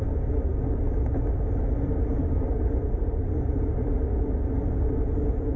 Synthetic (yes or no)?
no